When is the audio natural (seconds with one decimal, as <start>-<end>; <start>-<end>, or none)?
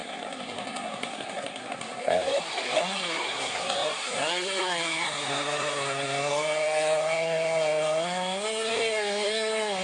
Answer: none